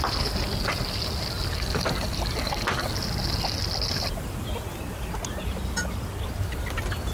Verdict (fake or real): real